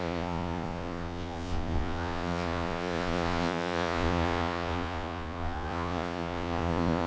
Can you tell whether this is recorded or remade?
remade